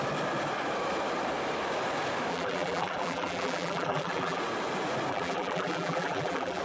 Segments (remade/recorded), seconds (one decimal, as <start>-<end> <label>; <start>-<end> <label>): 0.0-2.3 recorded; 2.3-4.4 remade; 4.4-5.1 recorded; 5.1-6.6 remade